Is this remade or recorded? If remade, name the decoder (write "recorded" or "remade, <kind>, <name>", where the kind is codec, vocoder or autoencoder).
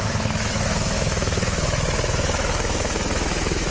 remade, autoencoder, DAC-VAE